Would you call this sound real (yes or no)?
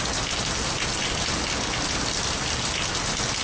yes